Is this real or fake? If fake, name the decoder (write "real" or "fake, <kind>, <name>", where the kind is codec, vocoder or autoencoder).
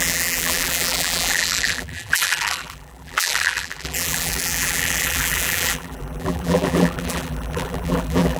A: fake, vocoder, BigVGAN v2